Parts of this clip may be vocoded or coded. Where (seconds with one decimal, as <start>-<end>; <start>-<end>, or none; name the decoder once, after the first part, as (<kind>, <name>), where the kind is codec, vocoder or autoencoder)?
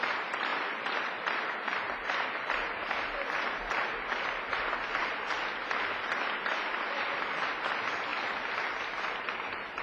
0.5-5.0 (vocoder, BigVGAN v2); 8.1-9.8